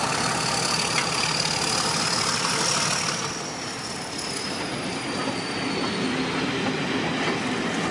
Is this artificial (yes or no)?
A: no